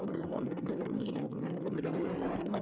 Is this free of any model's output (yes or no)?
no